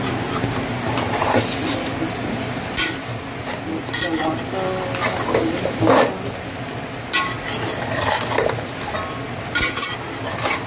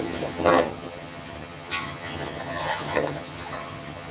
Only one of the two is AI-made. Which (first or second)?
second